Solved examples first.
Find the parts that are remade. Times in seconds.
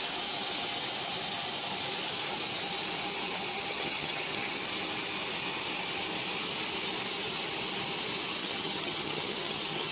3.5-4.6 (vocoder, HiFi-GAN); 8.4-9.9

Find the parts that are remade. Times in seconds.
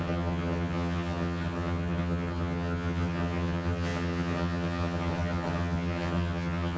0.0-6.8 (vocoder, HiFi-GAN)